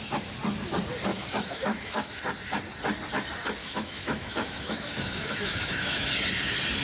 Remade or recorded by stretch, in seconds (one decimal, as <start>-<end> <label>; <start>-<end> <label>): 0.0-1.1 recorded; 1.1-2.2 remade; 2.2-3.6 recorded; 3.6-6.1 remade; 6.1-6.8 recorded